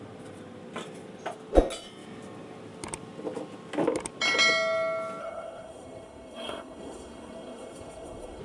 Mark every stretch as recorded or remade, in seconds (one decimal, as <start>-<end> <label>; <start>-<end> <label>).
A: 0.0-5.2 recorded; 5.2-8.4 remade